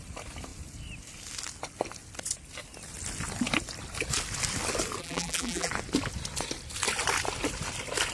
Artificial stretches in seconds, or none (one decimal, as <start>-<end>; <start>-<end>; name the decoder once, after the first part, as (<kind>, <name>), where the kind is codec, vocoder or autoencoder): 5.0-5.7 (vocoder, BigVGAN v2)